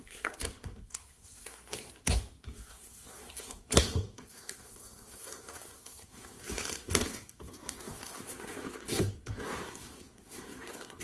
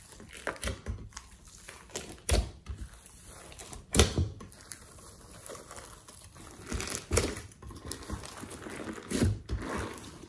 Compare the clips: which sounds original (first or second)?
second